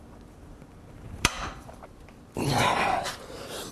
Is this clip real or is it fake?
fake